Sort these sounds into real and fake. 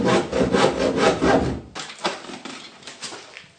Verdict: real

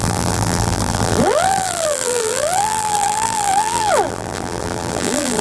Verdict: fake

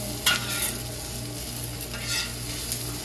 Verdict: real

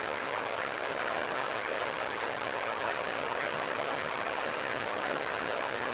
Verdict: fake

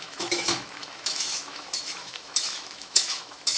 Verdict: fake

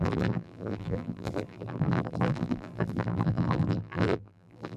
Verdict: fake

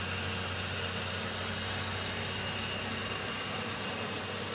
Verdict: real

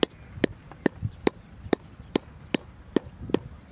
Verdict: real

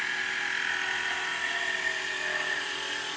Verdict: real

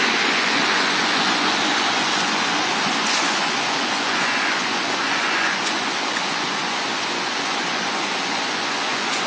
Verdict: fake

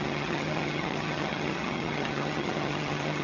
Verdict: fake